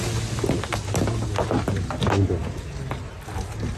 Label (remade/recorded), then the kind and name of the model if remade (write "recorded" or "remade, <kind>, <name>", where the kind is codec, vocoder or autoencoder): recorded